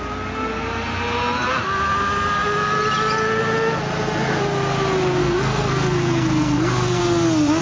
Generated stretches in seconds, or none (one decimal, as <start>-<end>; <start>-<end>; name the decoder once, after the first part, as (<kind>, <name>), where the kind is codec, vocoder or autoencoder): 5.2-7.0 (codec, SNAC)